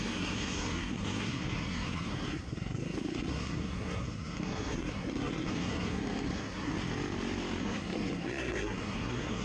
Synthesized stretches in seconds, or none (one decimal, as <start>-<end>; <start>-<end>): 0.0-6.7; 7.6-9.4

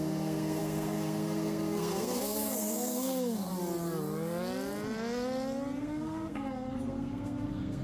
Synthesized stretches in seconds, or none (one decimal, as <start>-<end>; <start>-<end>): 0.0-3.5; 5.8-7.8

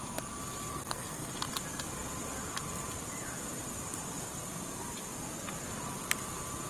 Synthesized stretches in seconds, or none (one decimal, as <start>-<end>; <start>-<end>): 0.7-1.3

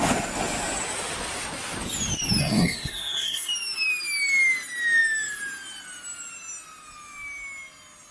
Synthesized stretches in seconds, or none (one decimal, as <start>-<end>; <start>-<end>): 2.4-3.5